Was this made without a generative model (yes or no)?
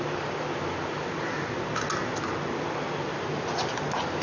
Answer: yes